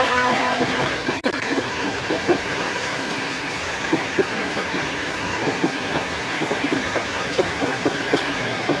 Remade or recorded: remade